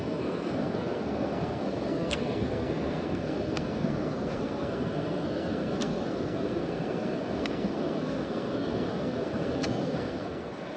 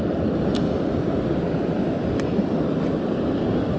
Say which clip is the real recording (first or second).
second